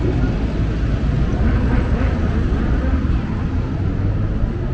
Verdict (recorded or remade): recorded